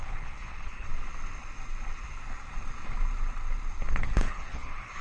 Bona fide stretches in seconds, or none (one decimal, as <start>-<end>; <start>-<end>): 0.9-3.9